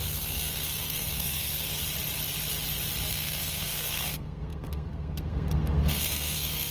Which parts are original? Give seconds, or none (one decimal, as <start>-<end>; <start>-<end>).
1.8-3.1